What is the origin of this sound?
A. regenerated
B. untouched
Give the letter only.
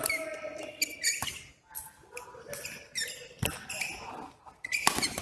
B